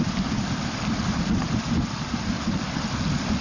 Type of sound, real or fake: real